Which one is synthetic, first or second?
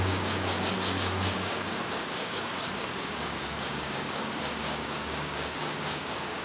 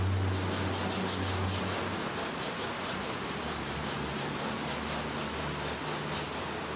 first